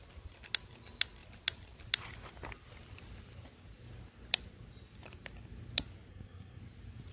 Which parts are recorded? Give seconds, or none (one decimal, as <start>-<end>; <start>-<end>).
0.0-6.1; 6.6-7.1